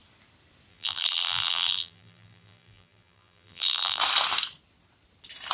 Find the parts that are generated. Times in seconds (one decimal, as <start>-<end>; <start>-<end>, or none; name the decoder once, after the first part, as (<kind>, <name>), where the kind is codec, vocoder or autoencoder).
0.7-4.0 (vocoder, BigVGAN v2)